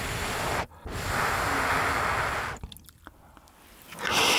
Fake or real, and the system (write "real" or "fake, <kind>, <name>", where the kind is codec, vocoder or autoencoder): real